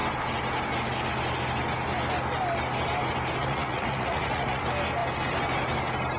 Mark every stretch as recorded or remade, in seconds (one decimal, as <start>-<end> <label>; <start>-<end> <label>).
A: 0.0-3.4 recorded; 3.4-4.6 remade; 4.6-6.2 recorded